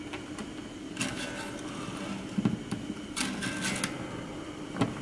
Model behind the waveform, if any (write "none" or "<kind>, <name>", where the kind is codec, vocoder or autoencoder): none